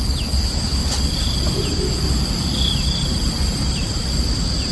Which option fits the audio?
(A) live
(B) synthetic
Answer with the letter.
A